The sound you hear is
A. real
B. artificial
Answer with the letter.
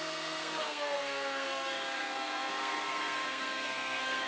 B